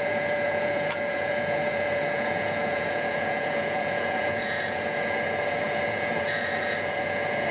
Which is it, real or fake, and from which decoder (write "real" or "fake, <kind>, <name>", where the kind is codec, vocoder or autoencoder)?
fake, vocoder, Vocos